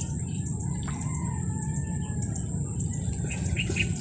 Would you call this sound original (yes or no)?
yes